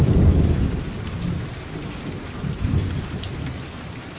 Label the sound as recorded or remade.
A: remade